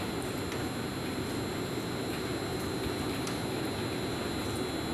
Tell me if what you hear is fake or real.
real